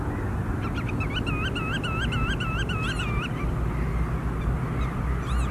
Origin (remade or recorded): recorded